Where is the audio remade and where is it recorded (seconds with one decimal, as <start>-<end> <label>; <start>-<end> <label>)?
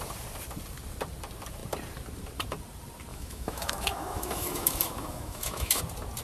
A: 0.0-3.1 recorded; 3.1-5.8 remade; 5.8-6.2 recorded